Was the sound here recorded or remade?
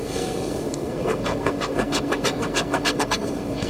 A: remade